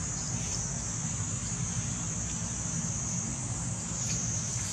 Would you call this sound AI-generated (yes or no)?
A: yes